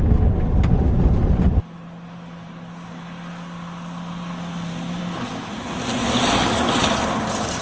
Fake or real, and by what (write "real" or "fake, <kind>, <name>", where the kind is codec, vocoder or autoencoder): real